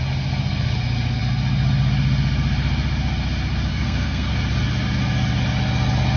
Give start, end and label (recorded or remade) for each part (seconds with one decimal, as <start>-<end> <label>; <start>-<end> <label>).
0.0-3.7 recorded; 3.7-4.3 remade; 4.3-6.2 recorded